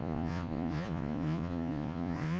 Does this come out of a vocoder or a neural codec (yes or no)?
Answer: yes